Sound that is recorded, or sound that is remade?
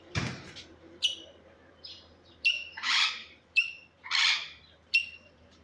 remade